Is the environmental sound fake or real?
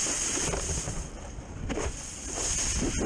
real